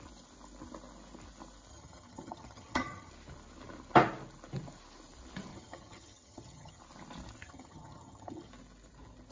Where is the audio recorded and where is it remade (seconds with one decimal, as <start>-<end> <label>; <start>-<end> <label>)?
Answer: 0.0-1.7 recorded; 1.7-3.1 remade; 3.1-5.5 recorded; 5.5-6.8 remade; 6.8-7.4 recorded; 7.4-8.5 remade; 8.5-9.3 recorded